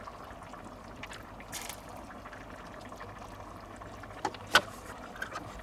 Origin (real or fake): real